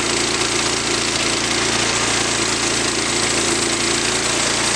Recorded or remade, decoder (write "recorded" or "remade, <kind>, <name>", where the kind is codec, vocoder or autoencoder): recorded